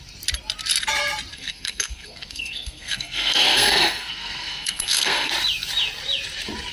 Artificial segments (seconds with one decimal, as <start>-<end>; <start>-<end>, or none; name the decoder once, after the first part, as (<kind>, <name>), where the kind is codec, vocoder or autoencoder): 1.3-5.3 (codec, SNAC)